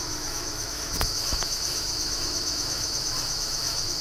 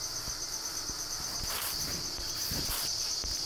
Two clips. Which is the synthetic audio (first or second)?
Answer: first